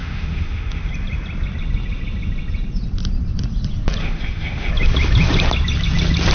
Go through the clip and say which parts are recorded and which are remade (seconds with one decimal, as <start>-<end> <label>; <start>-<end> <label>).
0.0-0.9 remade; 0.9-4.0 recorded; 4.0-4.7 remade; 4.7-6.3 recorded